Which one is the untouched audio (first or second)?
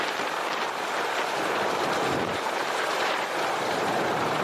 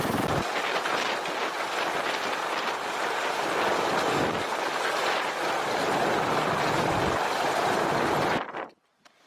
second